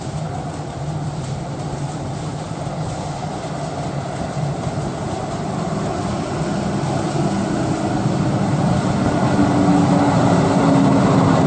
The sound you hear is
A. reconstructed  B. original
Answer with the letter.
B